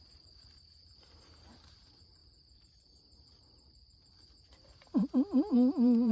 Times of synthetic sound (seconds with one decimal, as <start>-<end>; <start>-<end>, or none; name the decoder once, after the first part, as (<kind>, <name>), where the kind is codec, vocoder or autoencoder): 0.0-6.1 (vocoder, BigVGAN v2)